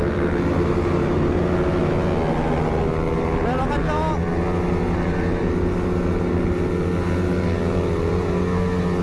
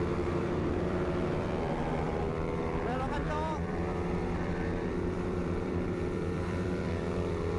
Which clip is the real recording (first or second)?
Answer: first